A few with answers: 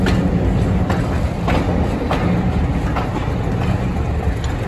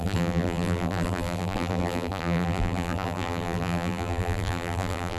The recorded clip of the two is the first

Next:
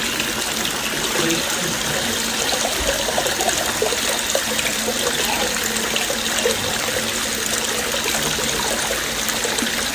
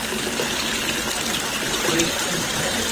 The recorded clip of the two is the first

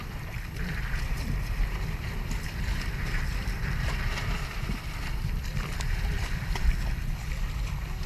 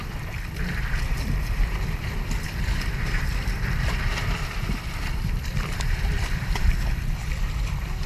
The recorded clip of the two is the first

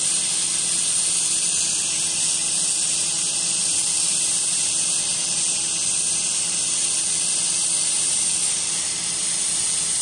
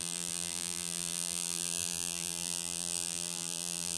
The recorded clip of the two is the first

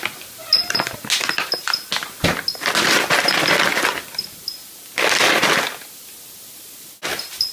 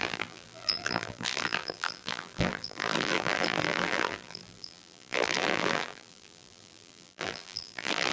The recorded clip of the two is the first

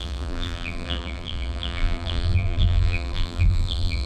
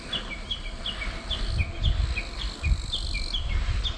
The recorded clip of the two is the second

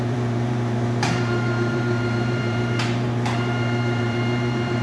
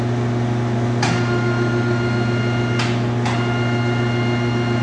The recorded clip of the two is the second